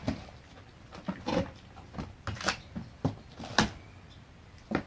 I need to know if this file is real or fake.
real